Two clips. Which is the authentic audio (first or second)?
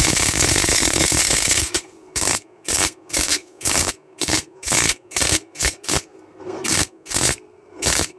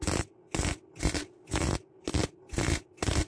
second